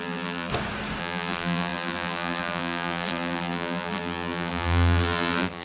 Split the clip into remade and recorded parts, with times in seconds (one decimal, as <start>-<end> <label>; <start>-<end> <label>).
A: 0.0-0.5 remade; 0.5-1.0 recorded; 1.0-5.6 remade